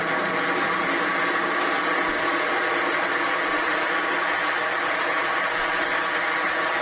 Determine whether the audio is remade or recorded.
recorded